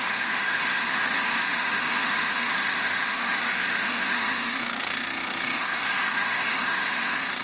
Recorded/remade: remade